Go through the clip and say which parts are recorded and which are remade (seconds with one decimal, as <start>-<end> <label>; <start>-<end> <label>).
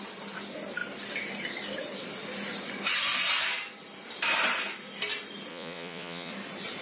0.0-5.5 recorded; 5.5-6.3 remade; 6.3-6.8 recorded